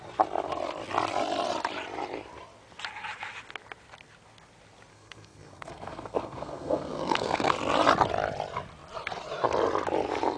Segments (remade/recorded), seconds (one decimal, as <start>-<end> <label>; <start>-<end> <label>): 0.0-4.9 recorded; 4.9-7.5 remade; 7.5-10.4 recorded